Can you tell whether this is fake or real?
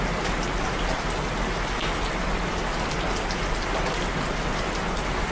real